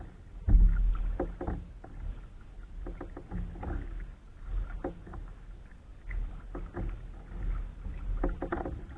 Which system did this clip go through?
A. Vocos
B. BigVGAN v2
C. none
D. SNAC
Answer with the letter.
C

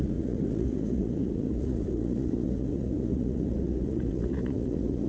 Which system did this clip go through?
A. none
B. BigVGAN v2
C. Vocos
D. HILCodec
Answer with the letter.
C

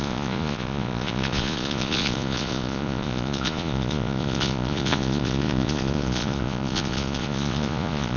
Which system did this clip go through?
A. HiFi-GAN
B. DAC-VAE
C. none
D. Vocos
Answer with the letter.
D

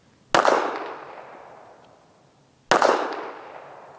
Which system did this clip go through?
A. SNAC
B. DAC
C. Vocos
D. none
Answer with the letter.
D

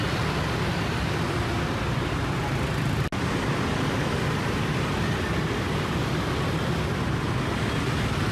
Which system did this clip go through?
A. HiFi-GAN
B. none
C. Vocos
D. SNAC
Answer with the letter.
B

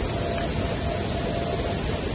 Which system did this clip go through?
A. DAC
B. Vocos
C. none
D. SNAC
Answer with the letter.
C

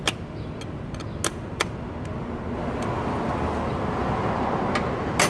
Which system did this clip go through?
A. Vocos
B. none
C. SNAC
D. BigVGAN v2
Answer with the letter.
B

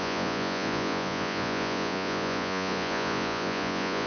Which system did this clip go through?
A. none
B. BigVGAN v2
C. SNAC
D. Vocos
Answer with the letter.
D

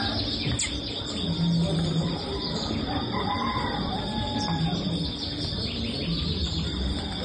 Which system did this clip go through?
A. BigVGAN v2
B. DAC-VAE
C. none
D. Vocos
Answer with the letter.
C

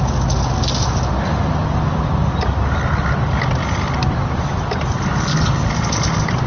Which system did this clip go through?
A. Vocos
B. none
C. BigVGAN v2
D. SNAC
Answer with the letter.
B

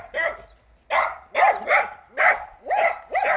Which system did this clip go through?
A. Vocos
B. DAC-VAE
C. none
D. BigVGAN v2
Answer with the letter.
C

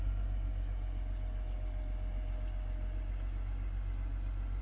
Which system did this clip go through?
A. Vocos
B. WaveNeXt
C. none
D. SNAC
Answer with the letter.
C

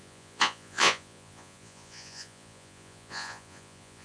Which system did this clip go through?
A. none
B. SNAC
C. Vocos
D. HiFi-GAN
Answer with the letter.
C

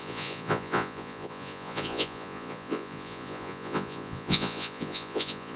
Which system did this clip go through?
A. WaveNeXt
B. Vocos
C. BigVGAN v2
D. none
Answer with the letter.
B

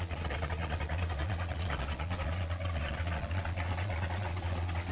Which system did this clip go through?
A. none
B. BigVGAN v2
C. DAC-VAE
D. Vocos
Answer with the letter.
D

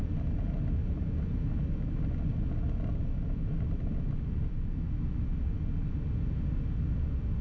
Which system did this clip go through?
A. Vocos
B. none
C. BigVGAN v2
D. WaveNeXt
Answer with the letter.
B